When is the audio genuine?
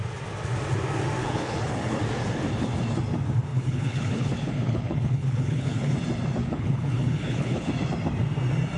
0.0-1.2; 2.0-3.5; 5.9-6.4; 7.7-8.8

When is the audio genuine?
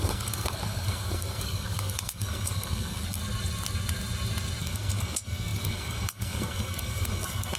3.2-4.6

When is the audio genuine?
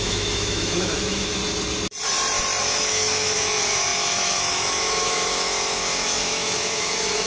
1.4-2.6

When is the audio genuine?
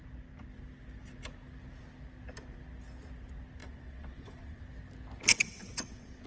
0.0-3.6; 4.6-5.3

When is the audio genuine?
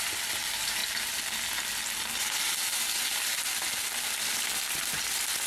0.8-4.1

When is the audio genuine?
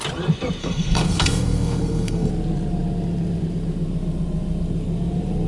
0.0-0.6; 2.3-5.5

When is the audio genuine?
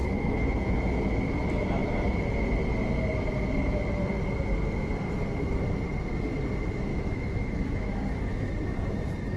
1.1-6.9; 8.5-9.4